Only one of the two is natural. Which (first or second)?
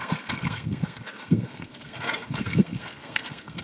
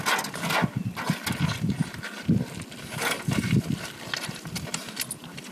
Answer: second